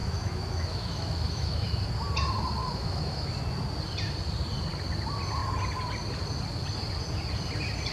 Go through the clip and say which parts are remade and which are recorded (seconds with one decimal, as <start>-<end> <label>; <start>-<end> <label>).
0.0-1.8 remade; 1.8-2.6 recorded; 2.6-3.3 remade; 3.3-7.9 recorded